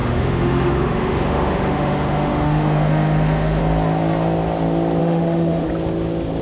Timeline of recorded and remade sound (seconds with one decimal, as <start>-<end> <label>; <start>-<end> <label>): 0.0-3.6 remade; 3.6-5.0 recorded; 5.0-5.7 remade; 5.7-6.4 recorded